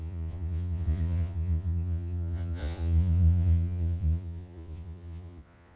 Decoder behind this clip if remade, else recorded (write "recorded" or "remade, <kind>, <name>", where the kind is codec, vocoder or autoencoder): remade, vocoder, Vocos